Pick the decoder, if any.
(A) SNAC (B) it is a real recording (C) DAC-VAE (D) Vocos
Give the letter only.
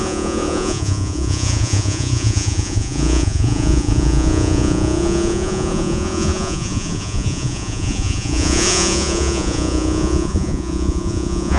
D